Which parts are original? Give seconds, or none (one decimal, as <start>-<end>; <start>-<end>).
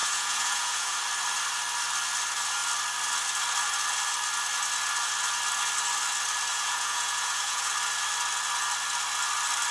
1.0-6.5; 7.7-9.7